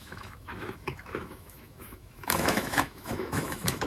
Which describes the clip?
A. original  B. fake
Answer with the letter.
B